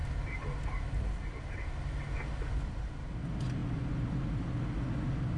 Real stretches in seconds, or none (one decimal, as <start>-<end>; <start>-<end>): 0.0-5.4